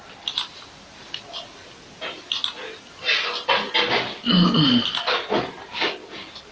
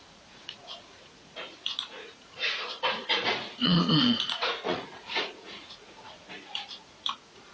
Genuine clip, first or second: first